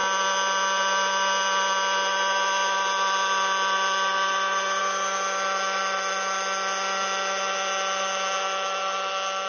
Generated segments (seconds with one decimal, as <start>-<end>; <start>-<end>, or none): none